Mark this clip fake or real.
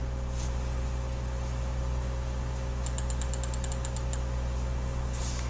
real